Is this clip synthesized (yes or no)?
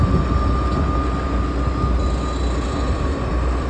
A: no